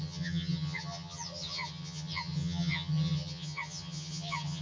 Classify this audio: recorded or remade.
remade